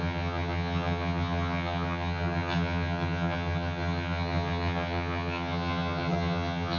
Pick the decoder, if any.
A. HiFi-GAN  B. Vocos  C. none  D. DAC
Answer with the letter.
A